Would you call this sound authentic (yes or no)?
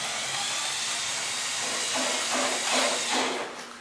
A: yes